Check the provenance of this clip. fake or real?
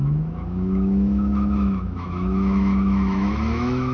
fake